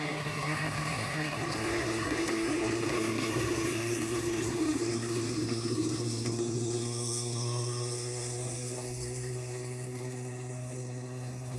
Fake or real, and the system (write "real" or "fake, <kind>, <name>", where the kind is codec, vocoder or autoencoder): fake, codec, SNAC